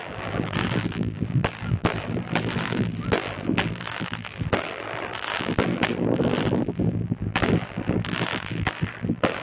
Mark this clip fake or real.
fake